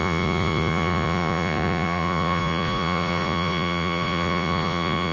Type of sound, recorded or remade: remade